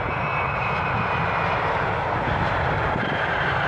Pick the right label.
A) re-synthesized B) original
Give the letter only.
B